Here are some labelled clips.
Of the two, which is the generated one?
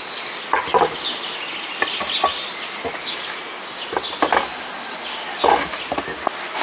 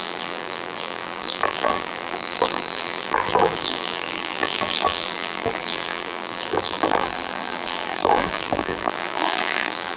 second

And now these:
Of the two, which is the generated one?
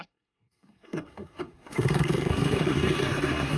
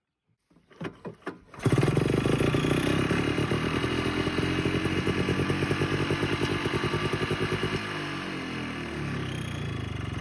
first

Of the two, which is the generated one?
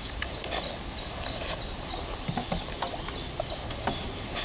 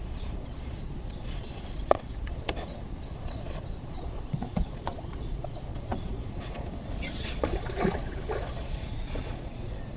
second